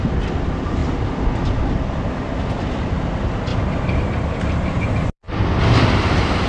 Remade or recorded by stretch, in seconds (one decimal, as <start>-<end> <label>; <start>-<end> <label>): 0.0-0.8 recorded; 0.8-1.5 remade; 1.5-3.5 recorded; 3.5-6.5 remade